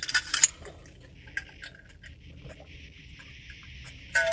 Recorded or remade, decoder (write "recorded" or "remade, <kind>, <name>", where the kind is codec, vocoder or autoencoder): recorded